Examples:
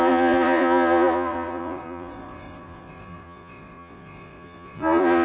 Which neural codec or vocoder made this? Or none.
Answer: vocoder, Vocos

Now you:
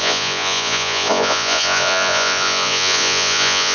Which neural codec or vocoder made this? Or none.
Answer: vocoder, Vocos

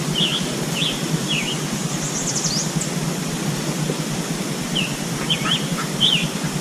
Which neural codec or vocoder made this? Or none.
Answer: vocoder, BigVGAN v2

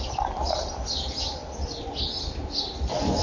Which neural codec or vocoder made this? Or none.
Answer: none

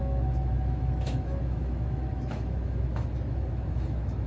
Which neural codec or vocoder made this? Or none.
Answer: autoencoder, DAC-VAE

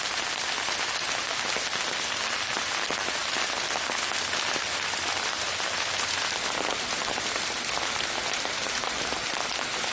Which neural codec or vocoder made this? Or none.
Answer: none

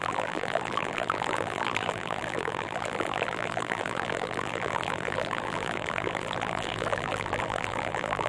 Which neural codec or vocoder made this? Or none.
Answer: vocoder, BigVGAN v2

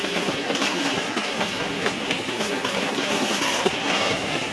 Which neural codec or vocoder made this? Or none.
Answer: codec, SNAC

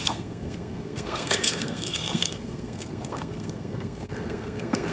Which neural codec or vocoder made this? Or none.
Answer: codec, SNAC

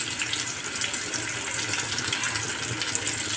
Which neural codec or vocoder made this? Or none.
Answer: none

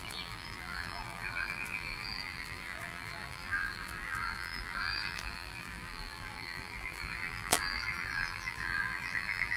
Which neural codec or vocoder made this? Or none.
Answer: vocoder, BigVGAN v2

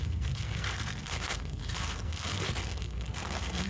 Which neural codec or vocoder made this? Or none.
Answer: codec, SNAC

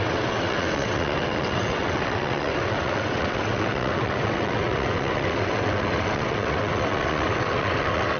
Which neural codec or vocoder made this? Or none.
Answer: vocoder, WaveNeXt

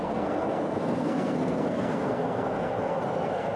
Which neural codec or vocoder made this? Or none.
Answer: codec, SNAC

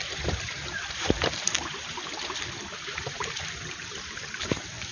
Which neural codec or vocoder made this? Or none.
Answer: vocoder, BigVGAN v2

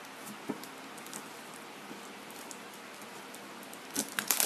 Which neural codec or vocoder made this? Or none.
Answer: none